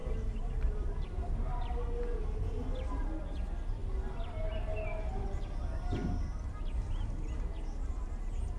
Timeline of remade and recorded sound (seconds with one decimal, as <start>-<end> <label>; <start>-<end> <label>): 0.0-8.6 recorded